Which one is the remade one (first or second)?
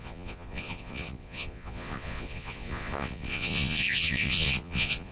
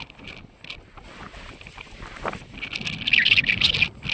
first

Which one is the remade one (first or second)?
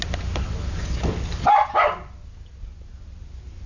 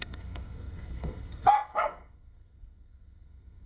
second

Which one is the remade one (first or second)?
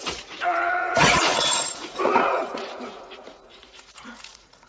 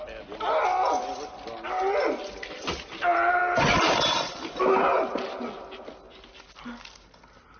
first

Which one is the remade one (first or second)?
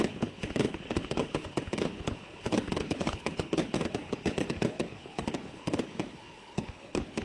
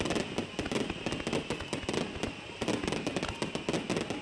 first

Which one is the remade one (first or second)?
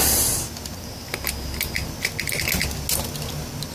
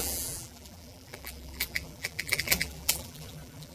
second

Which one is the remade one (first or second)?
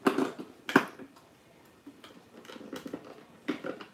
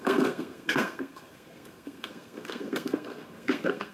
second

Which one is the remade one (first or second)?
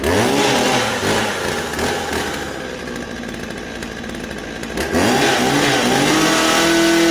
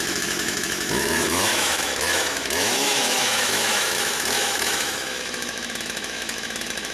second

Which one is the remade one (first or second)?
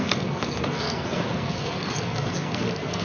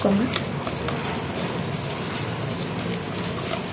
first